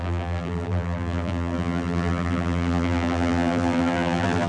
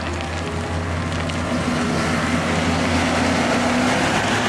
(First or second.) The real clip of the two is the second